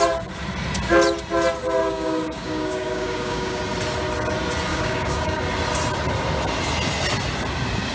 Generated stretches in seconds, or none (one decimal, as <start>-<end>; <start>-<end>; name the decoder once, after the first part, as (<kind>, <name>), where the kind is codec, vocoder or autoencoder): 1.8-3.6 (codec, DAC); 4.7-5.4